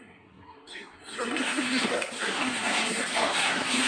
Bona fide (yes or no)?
no